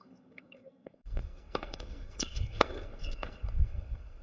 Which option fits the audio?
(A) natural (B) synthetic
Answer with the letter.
B